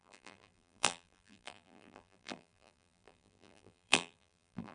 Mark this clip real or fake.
fake